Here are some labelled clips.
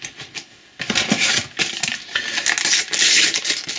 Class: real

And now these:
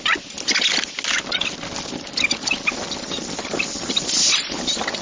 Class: real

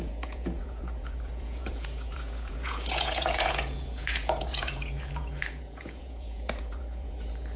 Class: fake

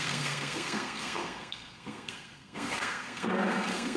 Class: fake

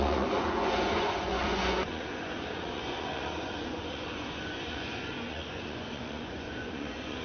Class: fake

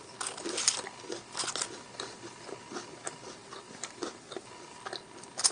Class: real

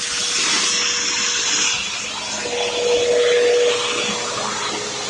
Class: real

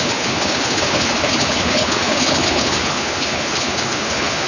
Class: fake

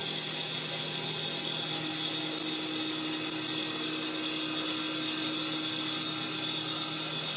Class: real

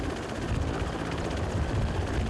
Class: real